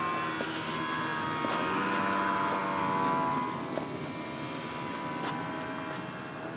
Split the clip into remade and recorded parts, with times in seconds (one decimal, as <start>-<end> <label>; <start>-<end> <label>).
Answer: 0.0-6.6 recorded

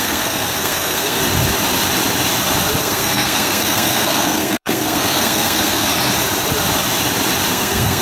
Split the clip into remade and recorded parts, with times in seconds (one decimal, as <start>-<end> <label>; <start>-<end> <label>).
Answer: 0.0-1.2 remade; 1.2-2.8 recorded; 2.8-5.9 remade; 5.9-7.5 recorded; 7.5-8.0 remade